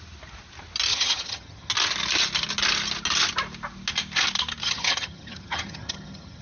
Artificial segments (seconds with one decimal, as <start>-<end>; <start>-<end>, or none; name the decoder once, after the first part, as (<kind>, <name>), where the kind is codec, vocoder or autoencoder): 0.9-1.7 (vocoder, HiFi-GAN); 4.6-6.4